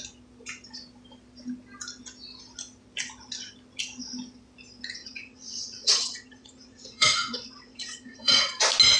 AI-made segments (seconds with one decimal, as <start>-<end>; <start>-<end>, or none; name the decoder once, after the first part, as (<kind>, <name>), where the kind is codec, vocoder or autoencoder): 5.0-8.6 (vocoder, WaveNeXt)